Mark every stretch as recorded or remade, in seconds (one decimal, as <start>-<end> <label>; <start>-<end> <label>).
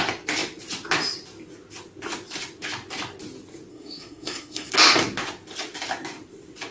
0.0-3.7 recorded; 3.7-4.7 remade; 4.7-6.7 recorded